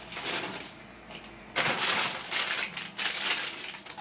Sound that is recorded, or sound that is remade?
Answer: recorded